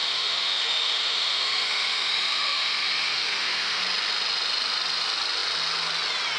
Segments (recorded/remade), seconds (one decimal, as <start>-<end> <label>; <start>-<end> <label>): 0.0-3.8 remade; 3.8-6.4 recorded